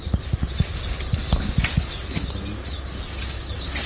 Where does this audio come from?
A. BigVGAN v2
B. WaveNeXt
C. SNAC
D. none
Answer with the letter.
D